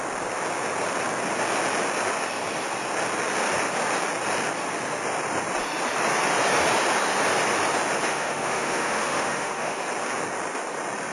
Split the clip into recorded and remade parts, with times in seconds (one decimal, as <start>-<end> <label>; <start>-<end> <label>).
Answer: 0.0-8.1 recorded; 8.1-9.8 remade; 9.8-11.1 recorded